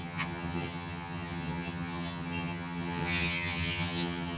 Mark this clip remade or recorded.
remade